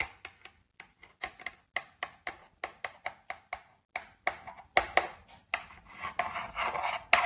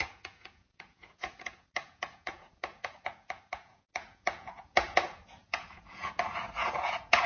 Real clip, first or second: first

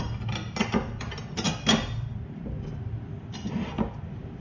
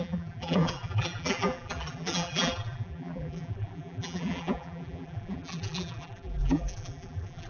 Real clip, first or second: first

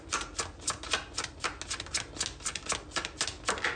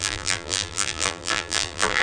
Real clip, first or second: first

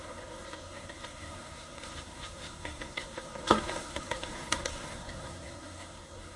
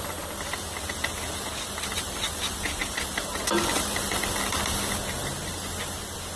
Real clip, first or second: second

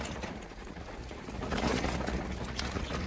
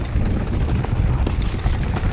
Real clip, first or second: second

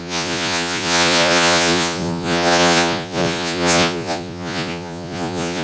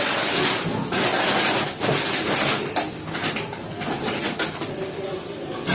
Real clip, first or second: second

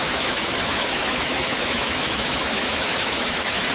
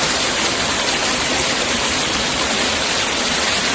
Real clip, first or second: second